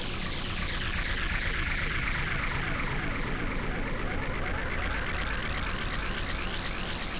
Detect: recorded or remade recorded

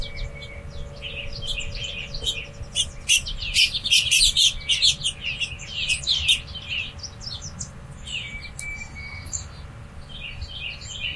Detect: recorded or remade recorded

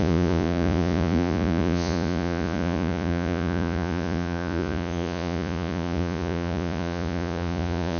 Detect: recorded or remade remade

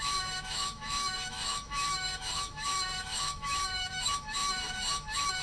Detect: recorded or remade remade